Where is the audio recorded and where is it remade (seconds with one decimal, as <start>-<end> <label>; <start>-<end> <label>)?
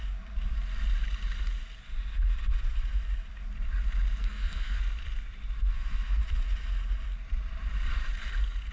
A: 0.0-4.2 recorded; 4.2-4.8 remade; 4.8-5.7 recorded; 5.7-6.2 remade; 6.2-8.7 recorded